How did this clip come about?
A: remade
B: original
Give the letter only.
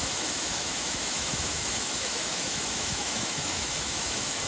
A